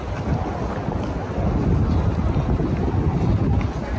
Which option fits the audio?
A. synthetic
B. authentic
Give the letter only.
B